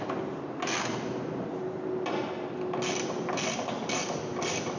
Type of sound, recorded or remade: recorded